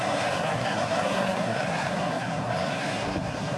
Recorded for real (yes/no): no